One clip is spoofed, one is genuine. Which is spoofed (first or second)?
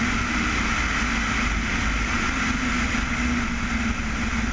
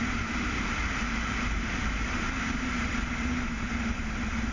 second